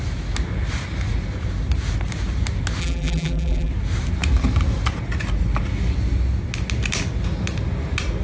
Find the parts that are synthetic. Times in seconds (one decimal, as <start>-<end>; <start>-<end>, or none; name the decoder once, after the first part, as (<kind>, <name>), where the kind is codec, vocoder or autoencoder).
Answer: 2.8-3.7 (vocoder, BigVGAN v2)